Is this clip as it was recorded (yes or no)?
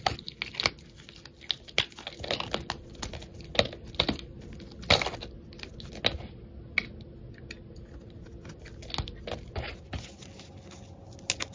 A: yes